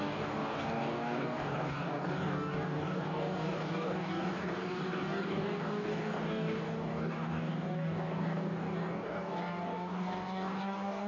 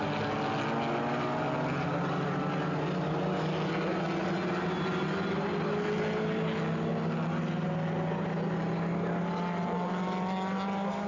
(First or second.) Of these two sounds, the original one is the second